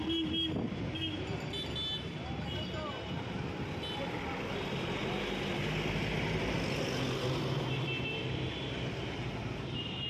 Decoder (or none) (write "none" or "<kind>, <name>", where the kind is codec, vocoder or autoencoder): none